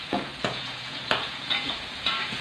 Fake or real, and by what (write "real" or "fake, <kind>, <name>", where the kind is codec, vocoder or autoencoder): fake, vocoder, Vocos